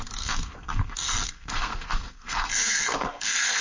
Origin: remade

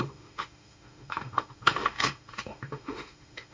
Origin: remade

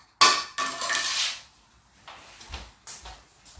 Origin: recorded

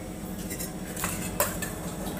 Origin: recorded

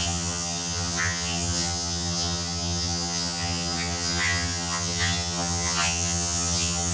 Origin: remade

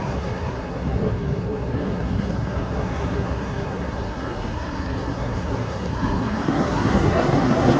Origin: remade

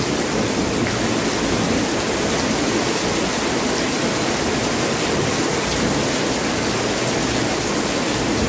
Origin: recorded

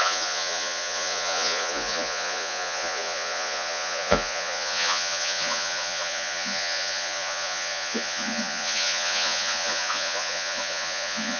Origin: remade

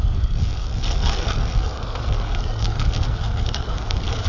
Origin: remade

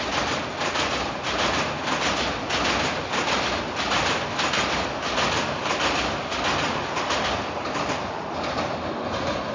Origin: recorded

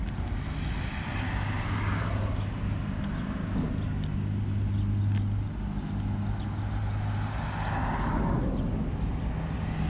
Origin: recorded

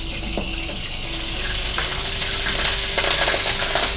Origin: recorded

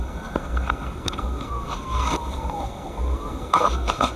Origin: remade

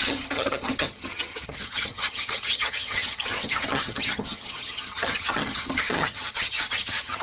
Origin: remade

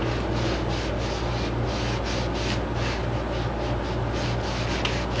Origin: recorded